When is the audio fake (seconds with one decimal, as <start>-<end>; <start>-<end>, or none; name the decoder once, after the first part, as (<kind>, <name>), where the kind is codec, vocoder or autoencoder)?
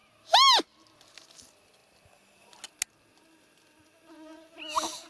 none